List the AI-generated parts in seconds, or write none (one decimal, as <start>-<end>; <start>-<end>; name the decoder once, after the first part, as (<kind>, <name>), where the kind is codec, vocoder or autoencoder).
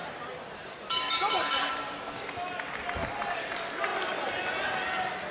0.0-1.7 (vocoder, BigVGAN v2); 3.0-3.5